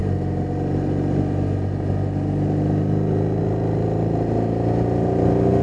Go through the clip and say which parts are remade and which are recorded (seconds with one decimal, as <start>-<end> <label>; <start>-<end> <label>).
0.0-5.6 recorded